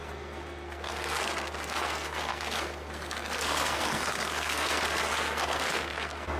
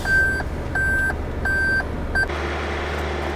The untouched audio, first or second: second